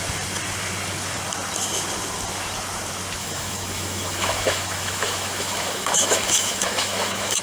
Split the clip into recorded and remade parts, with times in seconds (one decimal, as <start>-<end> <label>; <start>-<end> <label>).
0.0-3.2 recorded; 3.2-7.4 remade